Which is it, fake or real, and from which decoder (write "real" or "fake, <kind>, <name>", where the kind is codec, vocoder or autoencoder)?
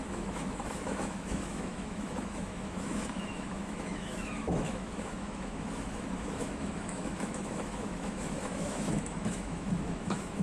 fake, autoencoder, DAC-VAE